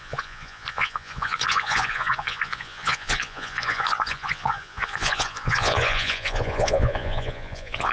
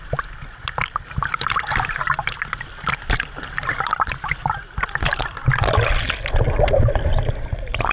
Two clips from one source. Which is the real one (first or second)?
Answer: second